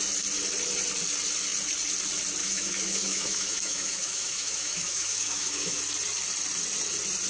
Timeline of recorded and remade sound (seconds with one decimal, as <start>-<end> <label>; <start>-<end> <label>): 0.0-2.4 recorded; 2.4-5.8 remade; 5.8-7.3 recorded